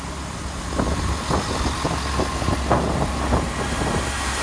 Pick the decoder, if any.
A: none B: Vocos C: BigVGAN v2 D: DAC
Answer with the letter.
A